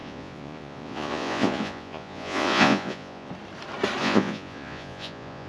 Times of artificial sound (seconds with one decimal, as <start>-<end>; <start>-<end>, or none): 0.0-3.3; 4.0-5.5